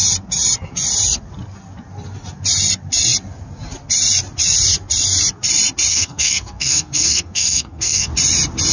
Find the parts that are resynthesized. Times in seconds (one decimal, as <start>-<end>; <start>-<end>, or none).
5.9-8.1